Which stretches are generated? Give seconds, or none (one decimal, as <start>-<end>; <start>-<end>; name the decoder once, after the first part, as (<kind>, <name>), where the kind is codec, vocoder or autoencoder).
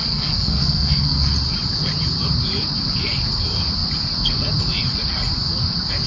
0.0-1.3 (codec, SNAC)